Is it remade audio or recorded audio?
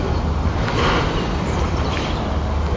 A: recorded